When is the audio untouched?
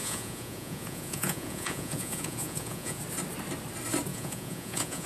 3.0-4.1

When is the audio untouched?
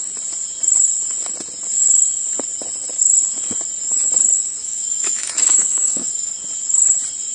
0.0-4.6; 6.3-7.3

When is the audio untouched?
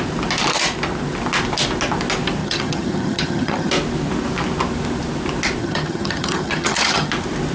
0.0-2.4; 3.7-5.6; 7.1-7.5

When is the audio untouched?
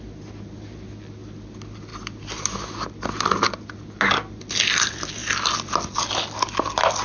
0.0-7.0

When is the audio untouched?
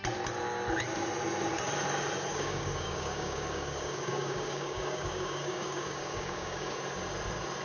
0.0-2.3; 6.7-7.6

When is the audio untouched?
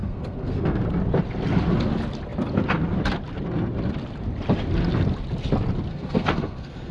0.8-5.9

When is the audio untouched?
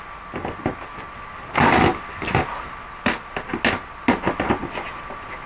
0.0-5.5